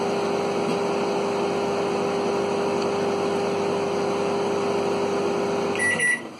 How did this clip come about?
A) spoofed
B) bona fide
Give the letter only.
B